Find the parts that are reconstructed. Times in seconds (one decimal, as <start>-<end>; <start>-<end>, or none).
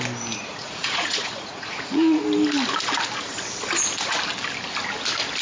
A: 0.5-2.2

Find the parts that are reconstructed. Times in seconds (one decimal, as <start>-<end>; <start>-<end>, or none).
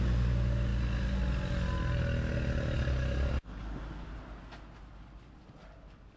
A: none